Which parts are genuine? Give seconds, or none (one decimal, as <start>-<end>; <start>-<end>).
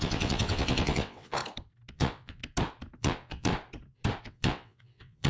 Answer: 1.4-1.9; 2.4-3.0; 3.5-4.2